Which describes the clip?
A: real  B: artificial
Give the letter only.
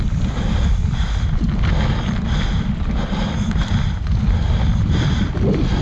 A